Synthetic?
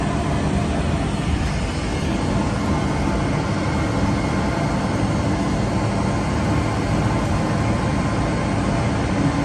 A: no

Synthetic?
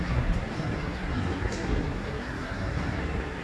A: yes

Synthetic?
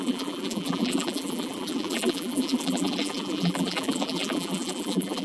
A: yes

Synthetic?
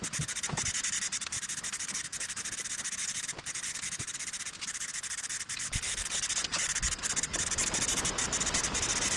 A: no